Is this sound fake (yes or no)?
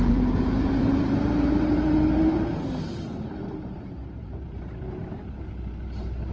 yes